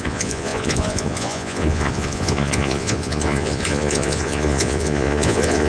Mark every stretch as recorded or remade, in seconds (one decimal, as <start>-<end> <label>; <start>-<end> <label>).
0.0-5.7 remade